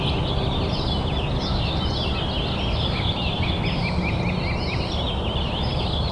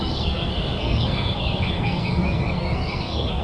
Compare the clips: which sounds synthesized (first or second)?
second